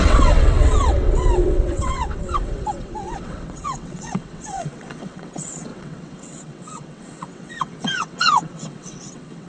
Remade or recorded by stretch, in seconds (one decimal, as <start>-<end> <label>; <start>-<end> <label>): 0.0-9.5 remade